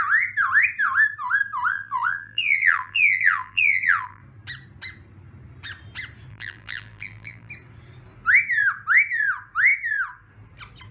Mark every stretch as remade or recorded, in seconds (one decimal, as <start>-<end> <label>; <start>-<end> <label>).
0.0-1.7 recorded; 1.7-4.2 remade; 4.2-6.3 recorded; 6.3-7.5 remade; 7.5-10.9 recorded